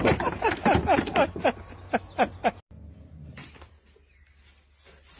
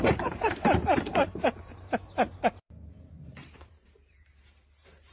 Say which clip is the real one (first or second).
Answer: first